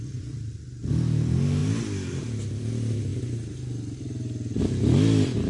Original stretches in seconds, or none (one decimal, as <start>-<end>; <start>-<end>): 0.0-5.5